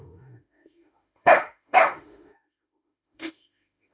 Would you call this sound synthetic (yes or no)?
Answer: yes